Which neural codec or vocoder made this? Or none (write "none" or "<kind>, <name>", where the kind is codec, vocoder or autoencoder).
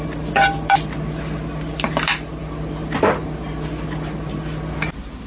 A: none